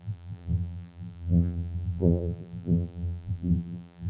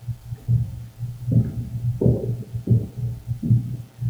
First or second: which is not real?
first